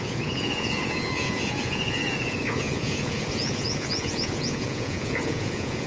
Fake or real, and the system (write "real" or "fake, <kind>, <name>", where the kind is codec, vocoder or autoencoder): fake, vocoder, Vocos